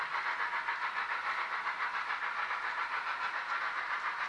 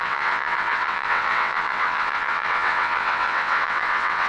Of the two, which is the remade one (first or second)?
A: second